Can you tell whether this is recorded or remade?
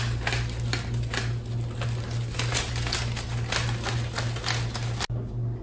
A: recorded